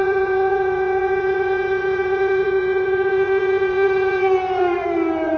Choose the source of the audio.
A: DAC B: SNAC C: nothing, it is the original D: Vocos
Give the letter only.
D